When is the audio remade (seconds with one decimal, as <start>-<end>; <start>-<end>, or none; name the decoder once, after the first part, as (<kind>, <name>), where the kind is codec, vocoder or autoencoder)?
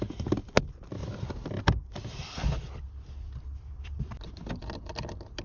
1.0-4.2 (vocoder, BigVGAN v2)